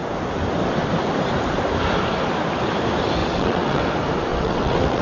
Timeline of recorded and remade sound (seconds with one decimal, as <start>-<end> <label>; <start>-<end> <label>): 0.0-3.2 recorded; 3.2-3.8 remade; 3.8-4.3 recorded; 4.3-5.0 remade